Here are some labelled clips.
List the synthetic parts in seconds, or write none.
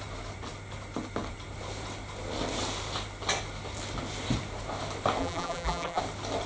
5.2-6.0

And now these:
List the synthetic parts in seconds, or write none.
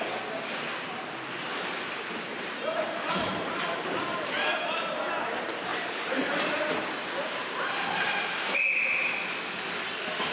1.5-4.6; 5.7-6.7